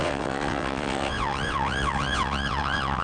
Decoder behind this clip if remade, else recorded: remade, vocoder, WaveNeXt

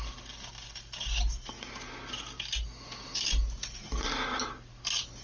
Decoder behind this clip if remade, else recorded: recorded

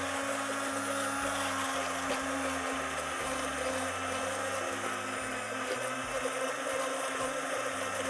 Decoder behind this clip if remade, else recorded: recorded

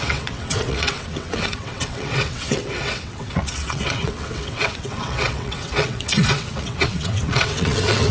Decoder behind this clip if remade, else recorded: remade, vocoder, WaveNeXt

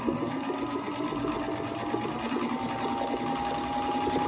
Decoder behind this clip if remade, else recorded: recorded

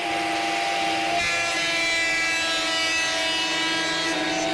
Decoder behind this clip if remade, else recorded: recorded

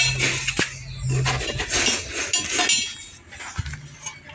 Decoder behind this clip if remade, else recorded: recorded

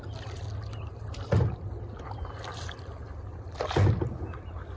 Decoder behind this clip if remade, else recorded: recorded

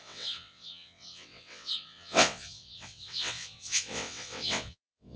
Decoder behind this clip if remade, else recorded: remade, vocoder, WaveNeXt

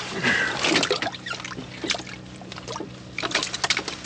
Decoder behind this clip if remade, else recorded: recorded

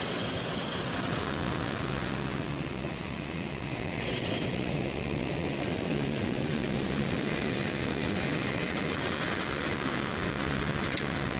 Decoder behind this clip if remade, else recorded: remade, vocoder, WaveNeXt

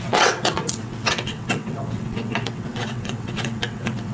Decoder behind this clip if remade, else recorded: remade, vocoder, WaveNeXt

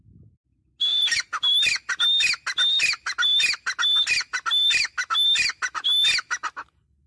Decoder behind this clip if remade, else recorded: recorded